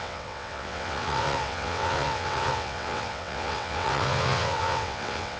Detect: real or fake fake